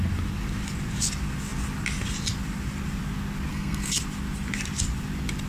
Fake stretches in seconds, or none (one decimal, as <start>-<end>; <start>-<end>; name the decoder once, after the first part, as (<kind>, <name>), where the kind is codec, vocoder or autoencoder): 3.5-4.0 (codec, SNAC)